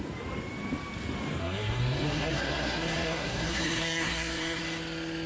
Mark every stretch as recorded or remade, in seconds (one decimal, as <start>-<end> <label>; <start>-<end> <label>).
0.0-1.4 recorded; 1.4-4.6 remade; 4.6-5.3 recorded